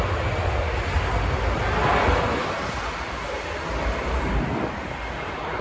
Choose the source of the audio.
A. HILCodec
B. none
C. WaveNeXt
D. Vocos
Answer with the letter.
B